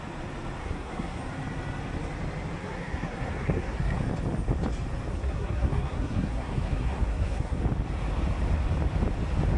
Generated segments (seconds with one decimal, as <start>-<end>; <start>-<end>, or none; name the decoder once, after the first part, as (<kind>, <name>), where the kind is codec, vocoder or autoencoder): 0.6-1.2 (codec, SNAC); 2.6-4.0; 5.1-7.6